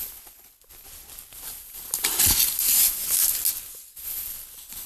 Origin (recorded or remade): recorded